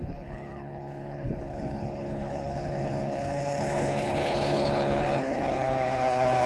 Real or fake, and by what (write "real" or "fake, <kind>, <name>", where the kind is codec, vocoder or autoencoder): fake, codec, HILCodec